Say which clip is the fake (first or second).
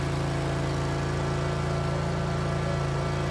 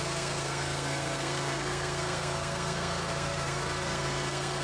second